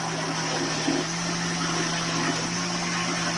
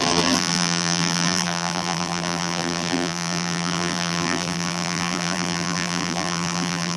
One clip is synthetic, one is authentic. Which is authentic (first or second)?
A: first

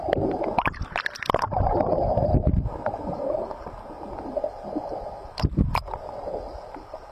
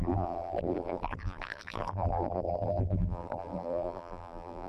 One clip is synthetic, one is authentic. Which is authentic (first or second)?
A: first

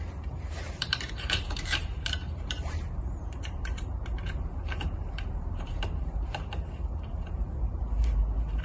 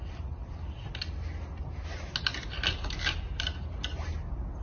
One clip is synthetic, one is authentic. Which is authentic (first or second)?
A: second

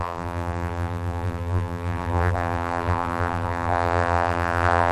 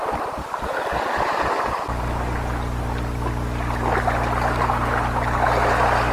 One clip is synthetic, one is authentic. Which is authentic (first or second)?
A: second